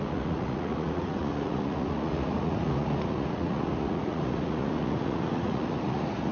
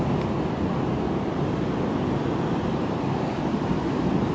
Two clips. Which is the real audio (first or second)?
second